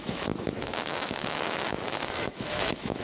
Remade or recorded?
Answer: remade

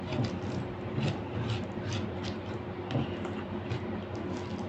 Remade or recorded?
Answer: recorded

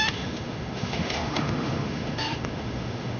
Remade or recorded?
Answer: remade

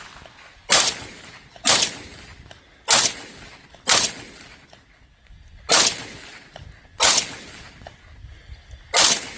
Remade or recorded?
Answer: recorded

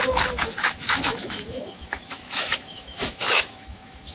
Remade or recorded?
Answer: remade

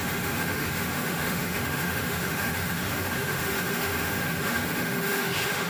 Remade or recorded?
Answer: remade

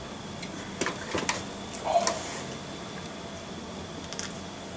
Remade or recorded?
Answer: recorded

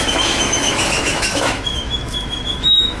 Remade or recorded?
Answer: remade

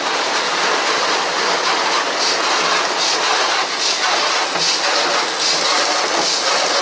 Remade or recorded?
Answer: recorded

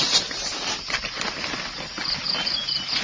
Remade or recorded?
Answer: recorded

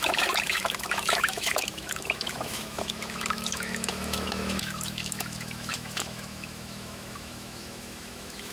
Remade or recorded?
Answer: remade